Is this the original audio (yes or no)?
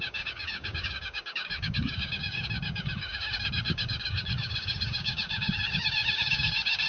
no